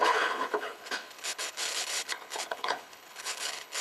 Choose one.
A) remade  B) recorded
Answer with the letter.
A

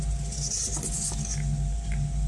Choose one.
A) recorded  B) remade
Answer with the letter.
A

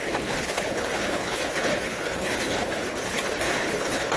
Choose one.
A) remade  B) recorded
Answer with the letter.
A